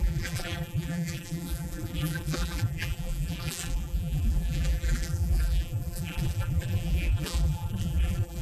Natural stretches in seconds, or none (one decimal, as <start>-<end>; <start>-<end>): none